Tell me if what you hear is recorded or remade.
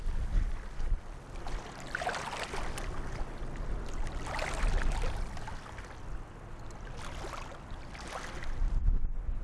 recorded